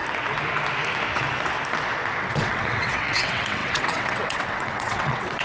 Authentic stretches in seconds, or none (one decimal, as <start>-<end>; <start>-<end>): 0.0-2.2